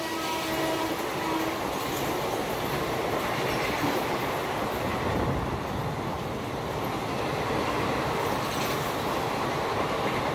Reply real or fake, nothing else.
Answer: real